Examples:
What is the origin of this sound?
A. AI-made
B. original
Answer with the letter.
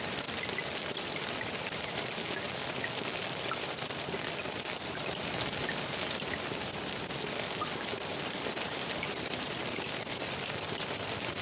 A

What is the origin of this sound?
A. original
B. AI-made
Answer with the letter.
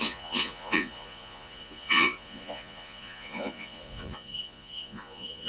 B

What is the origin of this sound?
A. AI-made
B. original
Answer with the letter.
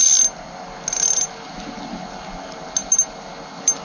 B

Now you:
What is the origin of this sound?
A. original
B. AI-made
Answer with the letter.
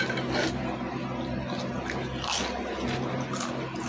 A